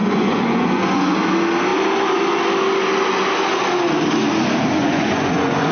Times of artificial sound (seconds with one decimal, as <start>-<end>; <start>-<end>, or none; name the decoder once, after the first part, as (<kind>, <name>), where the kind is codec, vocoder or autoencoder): 0.0-1.2 (vocoder, Vocos); 4.8-5.7